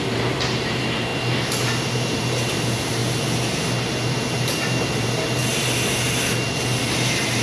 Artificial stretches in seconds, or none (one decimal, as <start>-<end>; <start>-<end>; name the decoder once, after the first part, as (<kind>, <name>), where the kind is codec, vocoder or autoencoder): 0.0-1.1 (vocoder, BigVGAN v2); 1.9-3.0; 4.1-5.4; 6.8-7.4